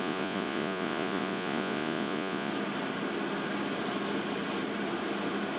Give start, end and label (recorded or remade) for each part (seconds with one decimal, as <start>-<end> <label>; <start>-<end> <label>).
0.0-2.5 remade; 2.5-5.6 recorded